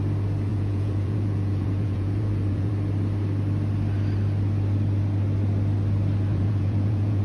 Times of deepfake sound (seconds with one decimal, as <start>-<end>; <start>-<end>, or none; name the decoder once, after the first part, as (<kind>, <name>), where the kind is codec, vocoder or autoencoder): 0.5-2.7 (vocoder, Vocos); 6.3-7.2

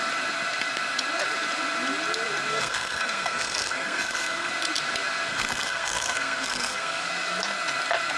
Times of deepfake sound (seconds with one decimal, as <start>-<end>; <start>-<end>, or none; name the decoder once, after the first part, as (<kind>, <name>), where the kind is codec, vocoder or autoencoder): 2.5-4.5 (codec, SNAC); 5.3-7.1